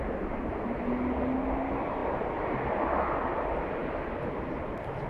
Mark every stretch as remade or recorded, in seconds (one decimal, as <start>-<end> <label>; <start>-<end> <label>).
0.0-5.1 recorded